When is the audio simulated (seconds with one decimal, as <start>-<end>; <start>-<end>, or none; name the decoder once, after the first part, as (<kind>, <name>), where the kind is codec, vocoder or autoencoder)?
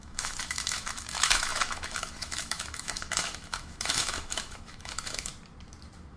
0.0-5.3 (autoencoder, DAC-VAE)